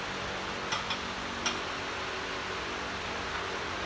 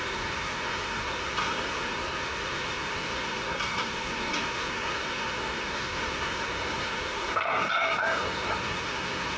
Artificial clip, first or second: second